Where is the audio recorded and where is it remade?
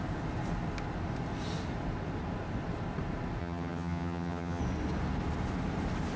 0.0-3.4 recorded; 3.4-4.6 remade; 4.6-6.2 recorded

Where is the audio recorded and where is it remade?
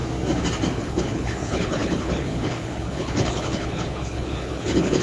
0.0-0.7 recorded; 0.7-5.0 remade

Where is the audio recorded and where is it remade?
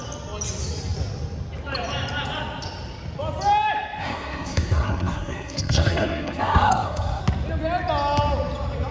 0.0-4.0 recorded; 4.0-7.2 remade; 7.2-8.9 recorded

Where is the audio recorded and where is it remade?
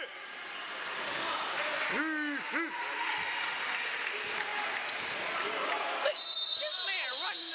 0.0-7.5 recorded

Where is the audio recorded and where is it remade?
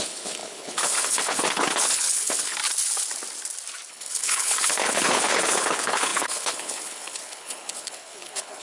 0.0-2.6 remade; 2.6-3.9 recorded; 3.9-8.6 remade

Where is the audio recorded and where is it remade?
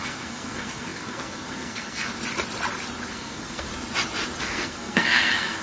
0.0-2.1 remade; 2.1-3.1 recorded; 3.1-3.7 remade; 3.7-4.4 recorded; 4.4-5.6 remade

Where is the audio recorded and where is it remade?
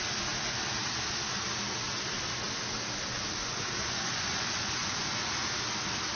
0.0-3.4 recorded; 3.4-5.3 remade; 5.3-6.2 recorded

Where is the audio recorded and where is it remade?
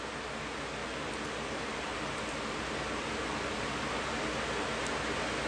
0.0-0.8 recorded; 0.8-4.1 remade; 4.1-5.5 recorded